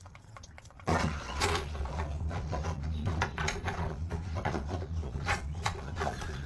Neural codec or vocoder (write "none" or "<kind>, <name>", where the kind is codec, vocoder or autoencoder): vocoder, Vocos